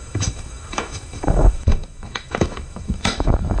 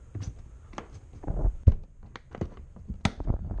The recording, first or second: second